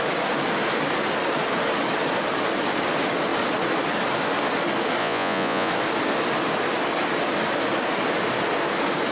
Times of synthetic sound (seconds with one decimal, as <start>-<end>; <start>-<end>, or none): 5.0-5.7